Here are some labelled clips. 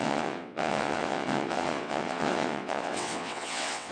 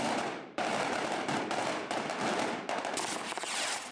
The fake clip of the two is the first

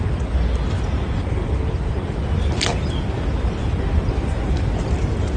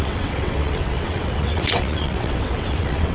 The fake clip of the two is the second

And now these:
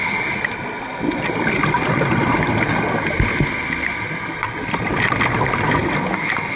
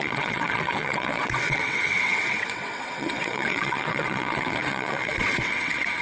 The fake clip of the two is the second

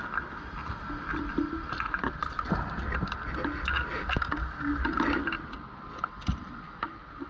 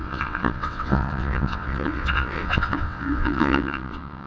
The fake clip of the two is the second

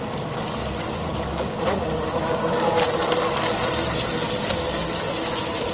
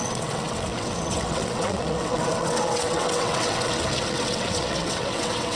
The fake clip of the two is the second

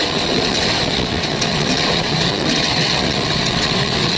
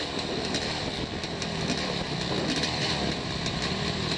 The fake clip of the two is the first